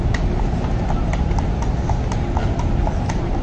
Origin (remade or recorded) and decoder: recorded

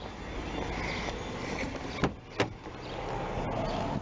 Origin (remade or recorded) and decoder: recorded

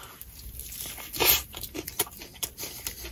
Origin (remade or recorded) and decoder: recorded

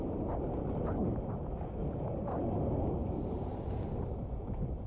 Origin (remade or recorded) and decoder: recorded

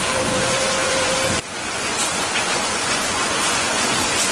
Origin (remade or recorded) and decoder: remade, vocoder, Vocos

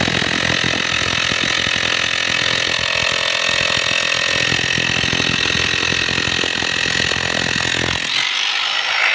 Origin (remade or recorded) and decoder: recorded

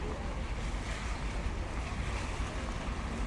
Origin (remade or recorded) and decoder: recorded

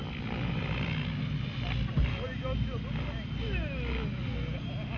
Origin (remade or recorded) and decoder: recorded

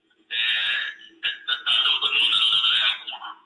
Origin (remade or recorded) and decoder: remade, vocoder, Vocos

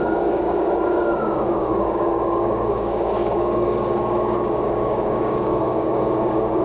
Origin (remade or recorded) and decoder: remade, codec, DAC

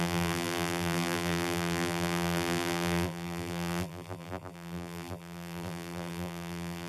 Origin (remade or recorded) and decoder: remade, vocoder, BigVGAN v2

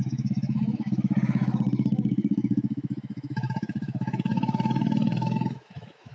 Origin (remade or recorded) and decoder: remade, autoencoder, DAC-VAE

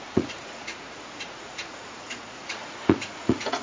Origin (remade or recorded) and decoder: remade, vocoder, Vocos